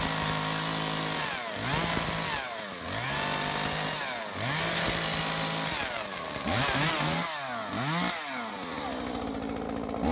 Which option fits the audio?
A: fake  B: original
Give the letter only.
B